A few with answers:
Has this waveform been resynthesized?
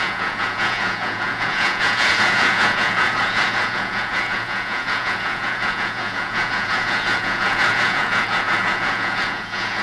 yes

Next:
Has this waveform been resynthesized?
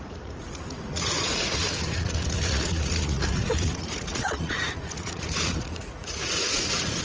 yes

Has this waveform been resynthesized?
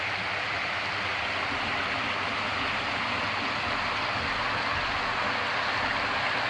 no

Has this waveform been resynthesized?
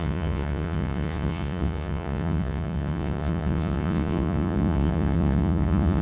yes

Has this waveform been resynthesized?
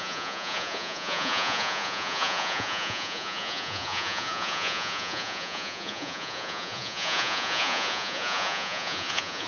yes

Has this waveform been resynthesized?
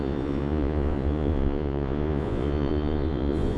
yes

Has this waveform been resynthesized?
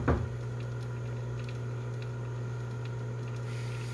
no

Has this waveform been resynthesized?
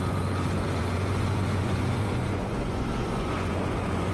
yes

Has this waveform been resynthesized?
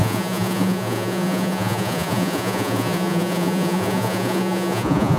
yes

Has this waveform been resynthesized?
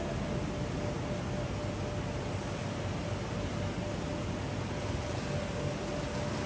no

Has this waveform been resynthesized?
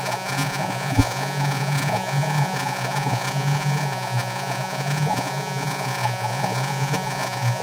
yes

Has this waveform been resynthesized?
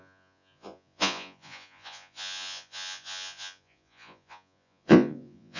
yes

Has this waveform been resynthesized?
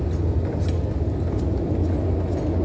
no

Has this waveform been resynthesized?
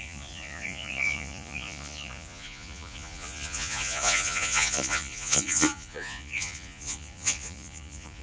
yes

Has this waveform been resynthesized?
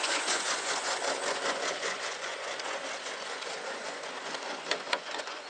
yes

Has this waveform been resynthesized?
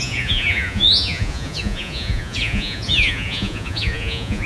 yes